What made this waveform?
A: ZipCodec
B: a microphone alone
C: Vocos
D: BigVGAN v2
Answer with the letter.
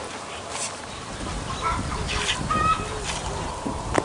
B